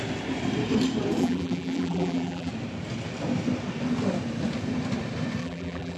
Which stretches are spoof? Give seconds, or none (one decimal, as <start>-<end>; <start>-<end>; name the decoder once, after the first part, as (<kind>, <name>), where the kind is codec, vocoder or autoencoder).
1.2-2.5 (vocoder, BigVGAN v2); 5.4-6.0